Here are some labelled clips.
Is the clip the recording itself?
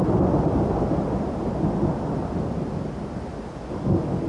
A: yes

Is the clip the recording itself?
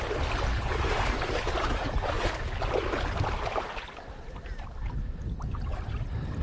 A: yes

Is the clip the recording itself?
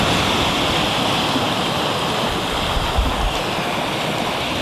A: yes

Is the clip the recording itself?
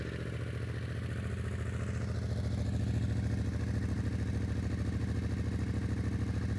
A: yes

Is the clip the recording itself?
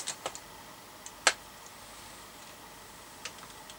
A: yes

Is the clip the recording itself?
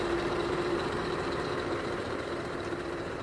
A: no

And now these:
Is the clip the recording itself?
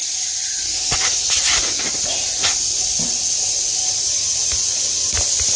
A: yes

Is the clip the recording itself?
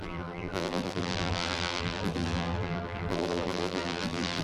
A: no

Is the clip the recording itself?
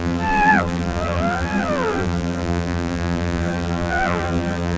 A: no